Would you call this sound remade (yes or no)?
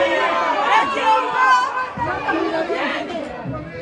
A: no